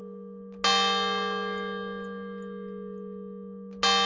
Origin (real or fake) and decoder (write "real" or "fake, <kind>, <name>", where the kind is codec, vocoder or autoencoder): real